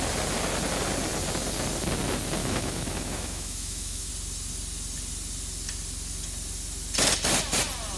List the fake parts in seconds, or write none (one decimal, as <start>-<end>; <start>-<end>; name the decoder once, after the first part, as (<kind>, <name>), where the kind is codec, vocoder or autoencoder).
2.4-4.1 (autoencoder, DAC-VAE)